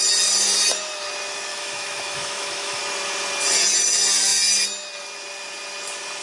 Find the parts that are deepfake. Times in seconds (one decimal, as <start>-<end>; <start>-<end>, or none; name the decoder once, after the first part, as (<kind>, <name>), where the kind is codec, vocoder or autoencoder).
1.5-2.8 (autoencoder, DAC-VAE)